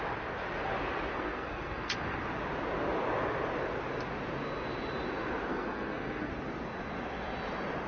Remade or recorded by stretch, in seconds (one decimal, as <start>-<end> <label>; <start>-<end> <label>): 0.0-1.1 recorded; 1.1-2.2 remade; 2.2-5.5 recorded; 5.5-6.3 remade; 6.3-7.9 recorded

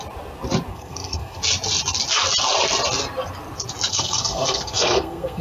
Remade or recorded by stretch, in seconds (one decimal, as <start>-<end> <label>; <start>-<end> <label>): 0.0-0.7 recorded; 0.7-1.4 remade; 1.4-3.9 recorded; 3.9-5.4 remade

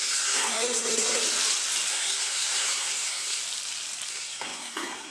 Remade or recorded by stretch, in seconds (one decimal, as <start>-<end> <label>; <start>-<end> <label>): 0.0-1.2 remade; 1.2-1.9 recorded; 1.9-3.4 remade; 3.4-4.1 recorded; 4.1-5.1 remade

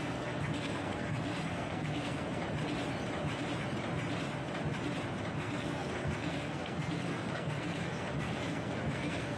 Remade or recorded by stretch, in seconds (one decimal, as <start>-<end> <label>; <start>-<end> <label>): 0.0-2.4 remade; 2.4-5.3 recorded; 5.3-9.4 remade

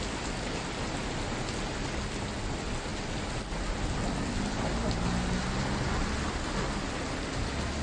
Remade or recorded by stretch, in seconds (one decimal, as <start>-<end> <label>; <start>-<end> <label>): 0.0-7.8 recorded

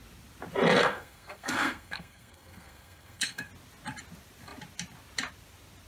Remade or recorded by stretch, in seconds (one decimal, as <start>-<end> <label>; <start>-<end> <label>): 0.0-0.8 recorded; 0.8-3.5 remade; 3.5-5.9 recorded